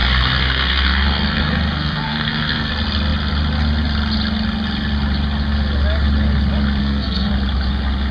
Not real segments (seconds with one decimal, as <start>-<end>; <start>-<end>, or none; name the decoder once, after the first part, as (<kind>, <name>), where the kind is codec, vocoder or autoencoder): 0.0-2.7 (codec, SNAC); 6.8-7.3